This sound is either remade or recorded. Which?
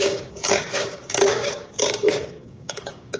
remade